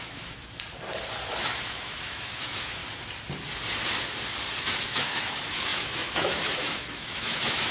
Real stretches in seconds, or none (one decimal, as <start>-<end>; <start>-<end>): 0.4-1.4; 2.8-4.6